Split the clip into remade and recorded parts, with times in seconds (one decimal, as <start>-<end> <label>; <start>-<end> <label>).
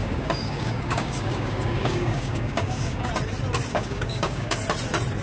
0.0-3.1 remade; 3.1-3.7 recorded; 3.7-4.6 remade; 4.6-5.2 recorded